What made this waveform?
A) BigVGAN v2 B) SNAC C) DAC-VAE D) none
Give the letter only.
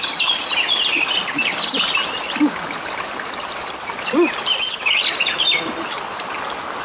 D